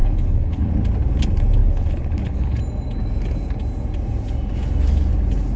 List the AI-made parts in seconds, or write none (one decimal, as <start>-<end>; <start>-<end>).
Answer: 0.0-0.7; 1.6-2.6

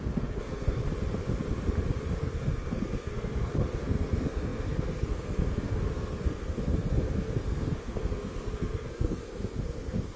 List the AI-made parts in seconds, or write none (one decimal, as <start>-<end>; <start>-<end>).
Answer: 0.0-0.8; 2.2-10.2

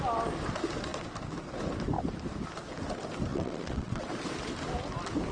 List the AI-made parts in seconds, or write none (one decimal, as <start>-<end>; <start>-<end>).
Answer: 3.3-4.1

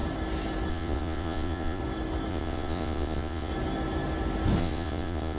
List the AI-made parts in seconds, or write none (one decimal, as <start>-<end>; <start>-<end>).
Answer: 0.7-1.8; 2.3-3.5; 4.6-5.4

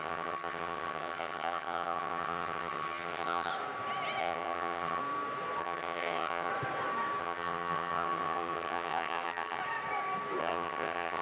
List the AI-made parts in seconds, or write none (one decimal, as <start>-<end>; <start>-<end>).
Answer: 0.0-3.5; 4.2-5.0; 5.6-6.5; 7.2-9.6; 10.4-11.2

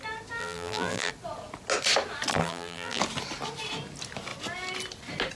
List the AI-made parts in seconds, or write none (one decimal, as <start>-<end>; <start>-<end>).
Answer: 0.4-1.1; 2.3-3.0

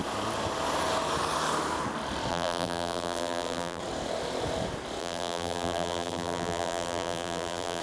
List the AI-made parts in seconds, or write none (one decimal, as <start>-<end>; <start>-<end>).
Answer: 2.3-3.8; 5.0-7.8

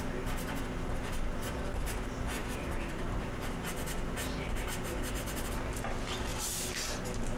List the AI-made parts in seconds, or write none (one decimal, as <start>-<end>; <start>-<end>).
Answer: none